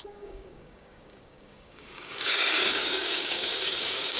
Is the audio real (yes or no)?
no